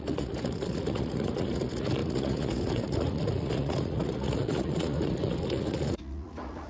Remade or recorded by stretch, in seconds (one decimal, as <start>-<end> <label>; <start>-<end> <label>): 0.0-6.7 remade